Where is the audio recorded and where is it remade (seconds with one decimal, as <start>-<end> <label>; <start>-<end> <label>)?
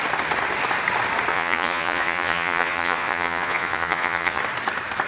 0.0-1.3 recorded; 1.3-4.4 remade; 4.4-5.1 recorded